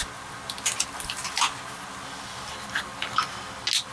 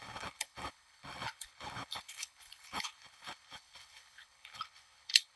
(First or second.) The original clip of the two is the first